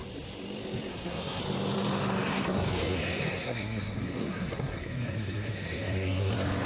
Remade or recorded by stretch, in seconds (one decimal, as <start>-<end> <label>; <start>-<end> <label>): 0.0-0.9 recorded; 0.9-1.4 remade; 1.4-2.3 recorded; 2.3-6.3 remade; 6.3-6.7 recorded